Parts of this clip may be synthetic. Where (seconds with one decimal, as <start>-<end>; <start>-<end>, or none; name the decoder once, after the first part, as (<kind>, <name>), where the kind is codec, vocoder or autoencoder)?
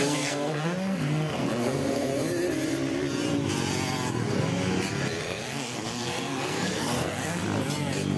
0.0-2.1 (codec, SNAC); 5.2-7.4